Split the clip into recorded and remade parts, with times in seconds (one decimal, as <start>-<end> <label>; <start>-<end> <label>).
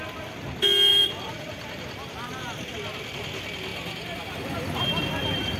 0.0-0.9 recorded; 0.9-2.7 remade; 2.7-3.7 recorded; 3.7-4.9 remade; 4.9-5.6 recorded